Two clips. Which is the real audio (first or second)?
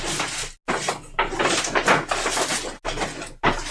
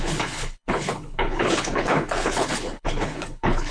first